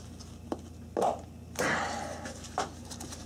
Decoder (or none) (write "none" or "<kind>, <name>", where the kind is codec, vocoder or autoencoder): none